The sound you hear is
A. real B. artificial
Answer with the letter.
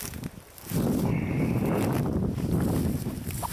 A